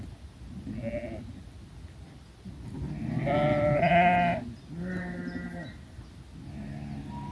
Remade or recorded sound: recorded